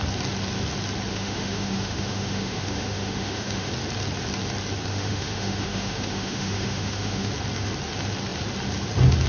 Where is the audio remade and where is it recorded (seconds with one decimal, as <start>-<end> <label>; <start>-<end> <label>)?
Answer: 0.0-1.1 recorded; 1.1-3.7 remade; 3.7-4.9 recorded; 4.9-7.3 remade; 7.3-9.3 recorded